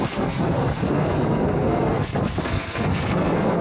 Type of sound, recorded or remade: remade